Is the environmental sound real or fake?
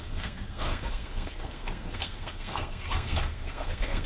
fake